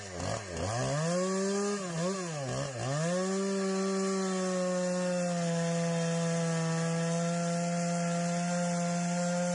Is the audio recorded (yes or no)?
yes